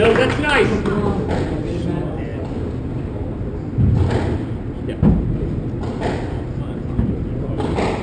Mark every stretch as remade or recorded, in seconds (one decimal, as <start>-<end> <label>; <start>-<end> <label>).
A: 0.0-8.0 recorded